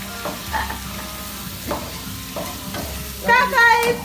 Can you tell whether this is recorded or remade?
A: recorded